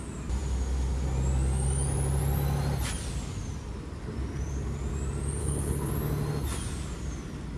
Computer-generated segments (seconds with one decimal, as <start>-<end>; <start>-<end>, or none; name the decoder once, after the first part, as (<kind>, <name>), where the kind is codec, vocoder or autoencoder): 5.4-5.9 (codec, HILCodec)